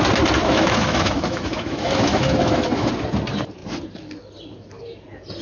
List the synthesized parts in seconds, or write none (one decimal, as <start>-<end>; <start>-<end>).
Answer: 0.4-2.9